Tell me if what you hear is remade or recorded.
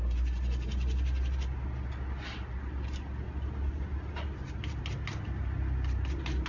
recorded